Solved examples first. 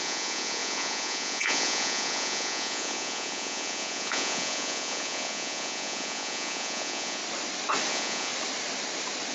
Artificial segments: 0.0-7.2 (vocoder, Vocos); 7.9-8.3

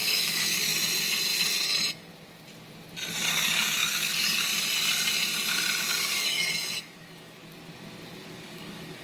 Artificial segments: 0.0-0.7 (codec, DAC); 3.2-4.5; 5.9-7.4; 8.3-9.0

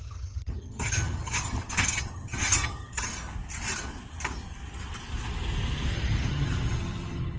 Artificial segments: 0.0-3.1 (vocoder, HiFi-GAN); 6.3-7.4

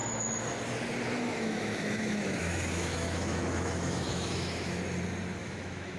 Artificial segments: 1.3-4.8 (autoencoder, DAC-VAE); 5.4-6.0

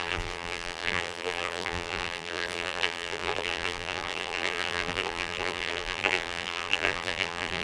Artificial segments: 0.0-7.6 (vocoder, BigVGAN v2)

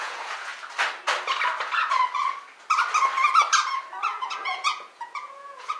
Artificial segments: 0.0-0.5 (vocoder, Vocos); 4.0-5.8